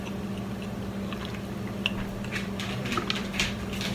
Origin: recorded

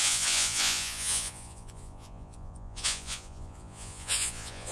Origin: remade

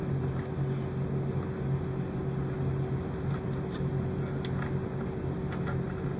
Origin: recorded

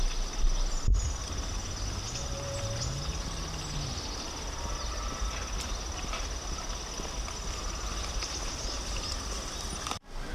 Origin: recorded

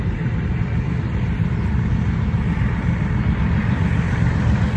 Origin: recorded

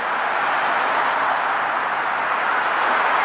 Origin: recorded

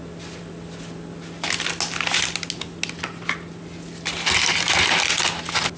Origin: recorded